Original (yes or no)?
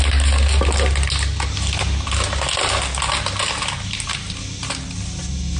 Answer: yes